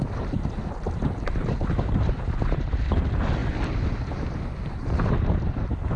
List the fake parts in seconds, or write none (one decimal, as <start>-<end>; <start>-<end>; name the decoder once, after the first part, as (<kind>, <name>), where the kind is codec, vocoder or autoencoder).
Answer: 1.4-2.5 (vocoder, BigVGAN v2)

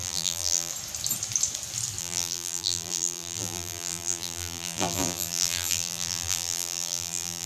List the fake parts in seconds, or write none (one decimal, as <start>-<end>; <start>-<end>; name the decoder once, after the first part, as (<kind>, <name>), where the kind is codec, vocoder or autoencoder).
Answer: 0.0-0.7 (vocoder, BigVGAN v2); 2.0-7.5

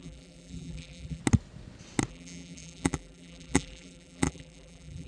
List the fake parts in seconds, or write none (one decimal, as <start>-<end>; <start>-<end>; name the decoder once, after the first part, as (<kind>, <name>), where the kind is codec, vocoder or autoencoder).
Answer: 0.0-1.2 (vocoder, BigVGAN v2); 2.1-5.1

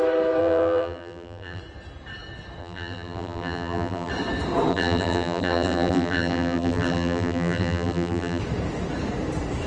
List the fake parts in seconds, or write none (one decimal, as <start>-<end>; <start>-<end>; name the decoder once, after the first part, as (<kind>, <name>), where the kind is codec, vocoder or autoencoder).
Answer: 0.4-1.6 (vocoder, BigVGAN v2); 2.6-4.1; 4.7-8.4

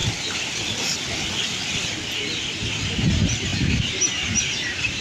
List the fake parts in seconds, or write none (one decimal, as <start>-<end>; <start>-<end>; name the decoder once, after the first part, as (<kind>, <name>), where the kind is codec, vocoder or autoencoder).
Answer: 2.4-5.0 (vocoder, BigVGAN v2)

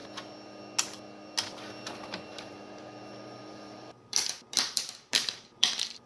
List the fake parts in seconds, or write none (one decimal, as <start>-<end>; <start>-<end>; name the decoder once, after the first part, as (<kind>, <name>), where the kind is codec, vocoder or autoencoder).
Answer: 2.3-6.1 (vocoder, BigVGAN v2)

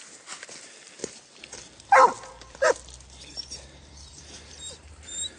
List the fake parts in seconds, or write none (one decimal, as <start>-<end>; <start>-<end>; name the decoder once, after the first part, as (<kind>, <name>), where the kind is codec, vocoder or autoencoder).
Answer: 0.0-1.0 (vocoder, BigVGAN v2); 2.3-5.4

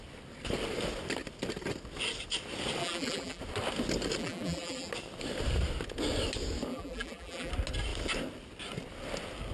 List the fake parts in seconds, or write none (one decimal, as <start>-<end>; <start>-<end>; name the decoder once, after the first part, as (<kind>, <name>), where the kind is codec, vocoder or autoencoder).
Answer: 2.8-3.4 (vocoder, BigVGAN v2); 4.2-4.9; 6.7-7.5